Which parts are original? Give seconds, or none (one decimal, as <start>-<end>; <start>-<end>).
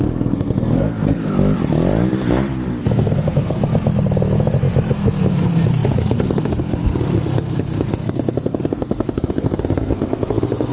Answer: 1.3-2.8; 3.6-4.9